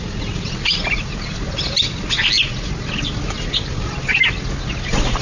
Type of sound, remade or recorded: recorded